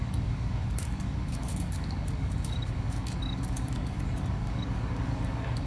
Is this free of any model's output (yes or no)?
no